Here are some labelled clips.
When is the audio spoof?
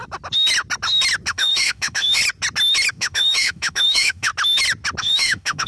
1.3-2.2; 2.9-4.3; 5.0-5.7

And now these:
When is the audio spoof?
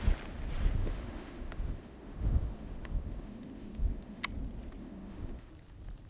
0.8-4.2; 4.8-5.5